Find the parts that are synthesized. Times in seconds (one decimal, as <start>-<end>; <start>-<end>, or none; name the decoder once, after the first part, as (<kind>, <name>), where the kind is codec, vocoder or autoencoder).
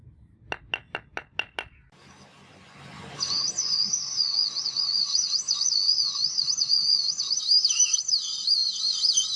2.3-7.2 (vocoder, Vocos)